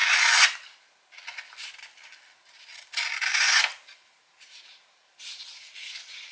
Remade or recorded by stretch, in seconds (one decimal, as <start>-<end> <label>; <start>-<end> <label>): 0.0-3.3 recorded; 3.3-6.3 remade